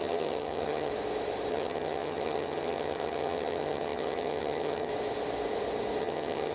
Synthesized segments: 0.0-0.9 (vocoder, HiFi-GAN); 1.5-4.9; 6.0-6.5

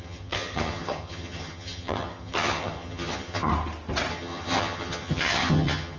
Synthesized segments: 0.0-3.5 (vocoder, HiFi-GAN); 4.1-6.0

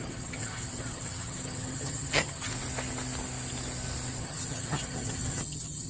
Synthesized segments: 0.0-2.5 (vocoder, HiFi-GAN); 4.2-5.9

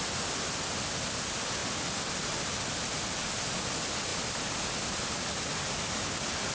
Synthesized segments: none

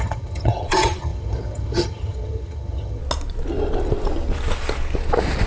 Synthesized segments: 0.0-3.0 (vocoder, HiFi-GAN)

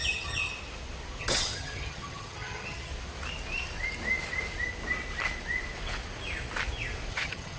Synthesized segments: 0.0-0.5 (vocoder, HiFi-GAN); 1.2-2.9; 7.1-7.6

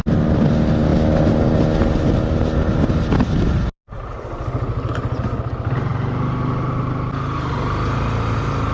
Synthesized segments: none

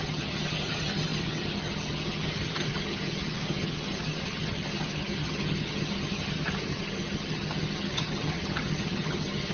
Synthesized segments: 0.0-9.5 (vocoder, HiFi-GAN)